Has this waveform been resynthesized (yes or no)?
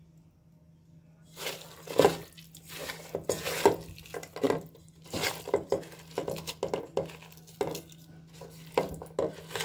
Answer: no